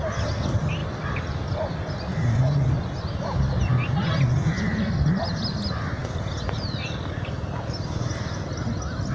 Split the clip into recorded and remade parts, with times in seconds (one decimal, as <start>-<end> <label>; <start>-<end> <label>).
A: 0.0-0.8 recorded; 0.8-2.4 remade; 2.4-9.1 recorded